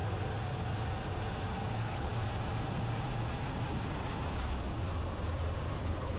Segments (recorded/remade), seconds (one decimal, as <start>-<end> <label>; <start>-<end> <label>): 0.0-1.7 recorded; 1.7-2.1 remade; 2.1-5.8 recorded; 5.8-6.2 remade